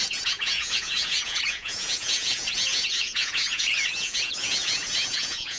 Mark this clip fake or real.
fake